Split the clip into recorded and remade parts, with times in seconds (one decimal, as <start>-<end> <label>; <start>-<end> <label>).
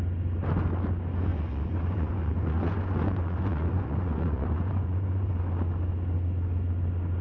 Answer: 0.0-1.3 recorded; 1.3-5.3 remade; 5.3-7.2 recorded